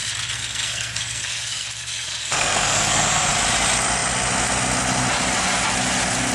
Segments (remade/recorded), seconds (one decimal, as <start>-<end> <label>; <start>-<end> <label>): 0.0-3.3 remade; 3.3-6.3 recorded